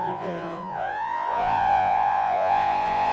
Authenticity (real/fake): fake